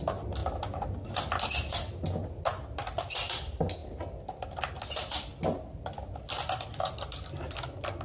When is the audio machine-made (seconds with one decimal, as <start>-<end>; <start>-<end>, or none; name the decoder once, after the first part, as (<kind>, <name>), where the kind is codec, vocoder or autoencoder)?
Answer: none